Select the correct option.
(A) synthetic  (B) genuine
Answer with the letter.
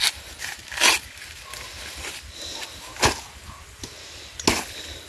B